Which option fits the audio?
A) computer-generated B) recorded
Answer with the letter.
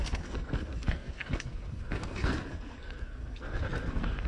A